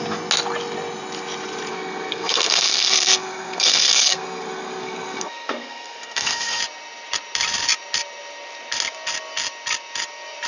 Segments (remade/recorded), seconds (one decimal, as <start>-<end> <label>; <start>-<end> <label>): 0.0-1.7 recorded; 1.7-6.6 remade; 6.6-10.5 recorded